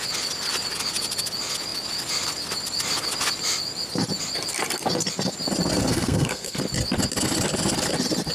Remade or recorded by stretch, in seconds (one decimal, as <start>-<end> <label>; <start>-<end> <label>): 0.0-5.9 recorded; 5.9-6.6 remade; 6.6-8.3 recorded